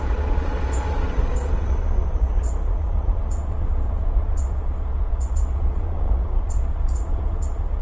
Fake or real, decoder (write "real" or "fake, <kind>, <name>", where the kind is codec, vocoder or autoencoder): fake, vocoder, Vocos